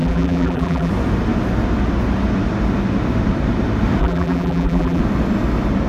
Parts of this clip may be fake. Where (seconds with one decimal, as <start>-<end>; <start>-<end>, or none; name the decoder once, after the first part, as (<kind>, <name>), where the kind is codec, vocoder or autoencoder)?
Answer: 0.0-0.9 (vocoder, BigVGAN v2); 4.0-5.0